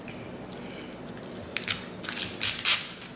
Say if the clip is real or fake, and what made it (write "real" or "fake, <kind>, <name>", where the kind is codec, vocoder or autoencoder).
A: real